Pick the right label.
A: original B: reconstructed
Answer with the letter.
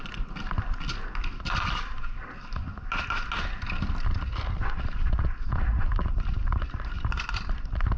A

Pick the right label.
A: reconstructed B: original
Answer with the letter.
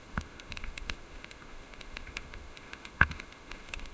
A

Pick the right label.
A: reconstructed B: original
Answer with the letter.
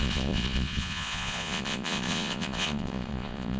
A